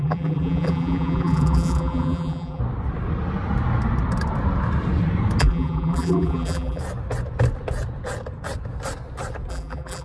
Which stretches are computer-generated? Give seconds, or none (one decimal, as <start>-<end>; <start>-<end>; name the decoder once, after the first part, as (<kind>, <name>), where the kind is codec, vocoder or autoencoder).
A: 0.0-2.6 (vocoder, BigVGAN v2); 5.4-6.8; 9.5-10.0

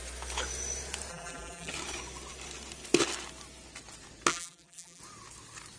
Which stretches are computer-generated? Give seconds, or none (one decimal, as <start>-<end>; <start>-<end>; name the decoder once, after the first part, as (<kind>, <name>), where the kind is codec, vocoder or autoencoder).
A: 1.1-1.7 (vocoder, BigVGAN v2); 4.3-5.0